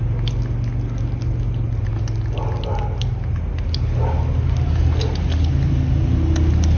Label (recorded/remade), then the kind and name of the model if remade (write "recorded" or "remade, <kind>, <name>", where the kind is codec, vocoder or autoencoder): recorded